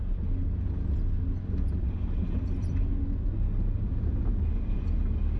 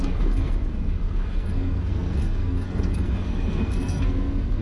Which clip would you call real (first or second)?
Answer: first